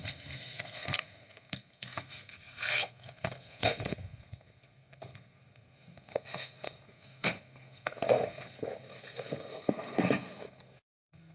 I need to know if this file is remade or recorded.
remade